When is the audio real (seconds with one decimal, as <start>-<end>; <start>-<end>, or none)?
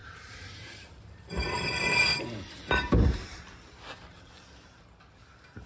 3.4-5.7